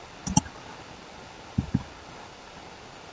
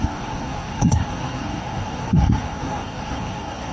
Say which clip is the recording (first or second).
first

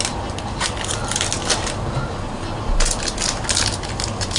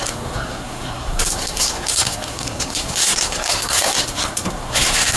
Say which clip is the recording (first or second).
first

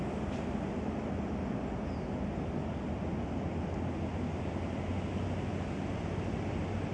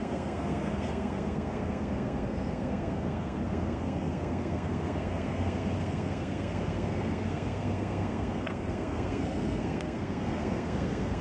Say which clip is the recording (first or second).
first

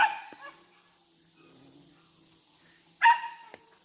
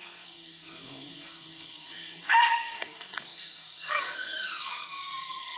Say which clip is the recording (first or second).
first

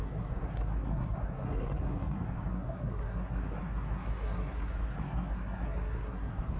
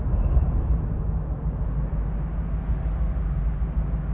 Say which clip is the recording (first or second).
second